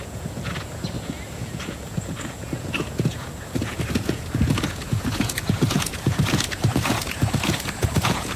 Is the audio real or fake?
fake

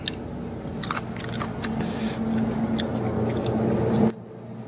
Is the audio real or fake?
real